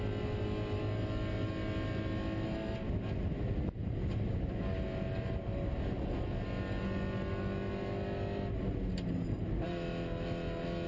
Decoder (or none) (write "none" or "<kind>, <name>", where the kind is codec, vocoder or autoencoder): none